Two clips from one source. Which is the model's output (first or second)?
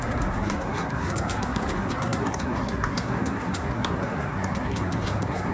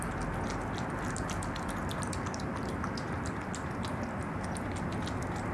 first